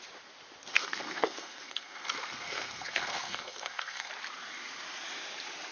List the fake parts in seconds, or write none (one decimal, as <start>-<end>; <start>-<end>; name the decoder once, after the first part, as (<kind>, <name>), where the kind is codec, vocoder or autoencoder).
0.7-4.1 (codec, SNAC)